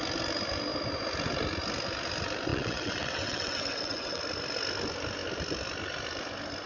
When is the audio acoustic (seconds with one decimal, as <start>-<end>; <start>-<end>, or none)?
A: 0.0-2.5; 4.2-6.7